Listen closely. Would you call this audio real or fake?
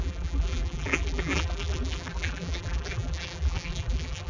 fake